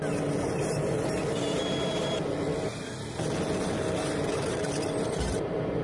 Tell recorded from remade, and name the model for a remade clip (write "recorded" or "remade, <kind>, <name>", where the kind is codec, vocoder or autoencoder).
recorded